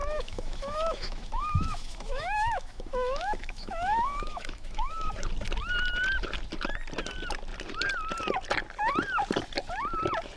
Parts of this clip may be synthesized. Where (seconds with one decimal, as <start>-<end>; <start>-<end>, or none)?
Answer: 0.0-5.1